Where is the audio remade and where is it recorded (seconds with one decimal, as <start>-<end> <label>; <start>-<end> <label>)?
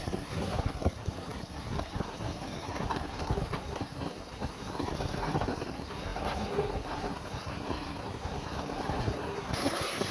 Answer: 0.0-10.1 remade